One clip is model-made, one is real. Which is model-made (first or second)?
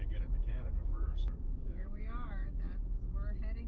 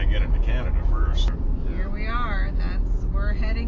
first